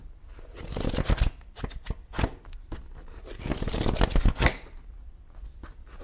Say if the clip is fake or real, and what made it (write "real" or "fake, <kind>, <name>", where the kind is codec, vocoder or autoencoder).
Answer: real